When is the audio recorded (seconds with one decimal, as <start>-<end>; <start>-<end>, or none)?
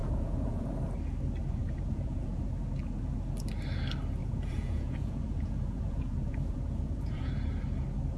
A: 0.7-1.6; 2.4-4.2; 7.3-8.2